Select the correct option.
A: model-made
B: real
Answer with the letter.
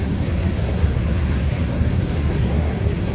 A